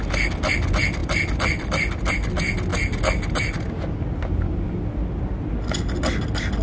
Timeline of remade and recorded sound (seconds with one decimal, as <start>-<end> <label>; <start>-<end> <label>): 0.0-6.6 recorded